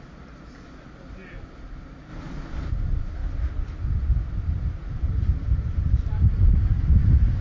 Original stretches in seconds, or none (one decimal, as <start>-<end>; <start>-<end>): 0.0-7.4